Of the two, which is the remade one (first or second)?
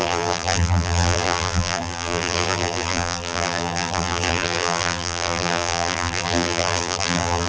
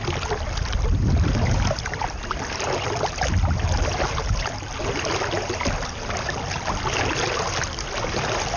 first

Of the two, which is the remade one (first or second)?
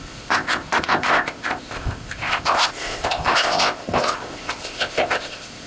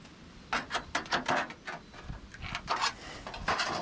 first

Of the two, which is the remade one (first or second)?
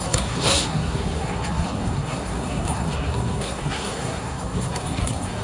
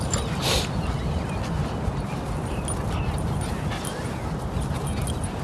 first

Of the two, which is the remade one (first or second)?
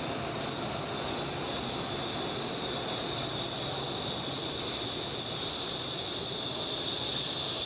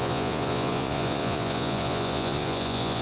second